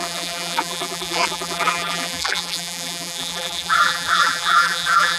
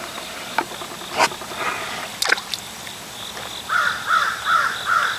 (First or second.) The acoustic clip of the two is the second